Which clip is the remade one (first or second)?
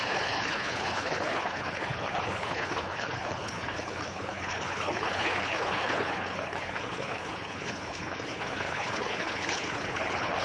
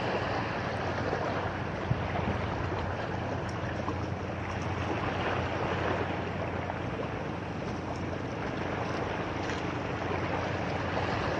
first